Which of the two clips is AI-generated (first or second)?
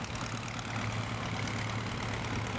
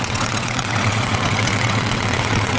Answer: second